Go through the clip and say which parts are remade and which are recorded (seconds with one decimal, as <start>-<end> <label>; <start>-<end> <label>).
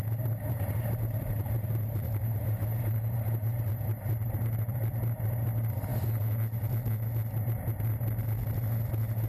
0.0-5.9 remade; 5.9-8.9 recorded; 8.9-9.3 remade